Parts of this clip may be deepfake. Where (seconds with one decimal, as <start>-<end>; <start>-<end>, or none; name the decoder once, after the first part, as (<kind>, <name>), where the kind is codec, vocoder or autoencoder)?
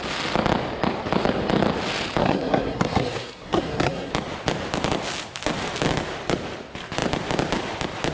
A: 2.2-4.1 (codec, SNAC)